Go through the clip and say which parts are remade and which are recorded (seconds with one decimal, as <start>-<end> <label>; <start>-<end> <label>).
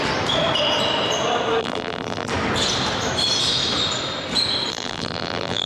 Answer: 0.0-1.6 recorded; 1.6-2.3 remade; 2.3-4.7 recorded; 4.7-5.7 remade